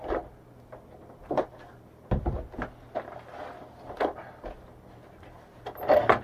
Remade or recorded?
recorded